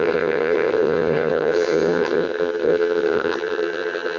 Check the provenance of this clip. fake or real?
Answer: fake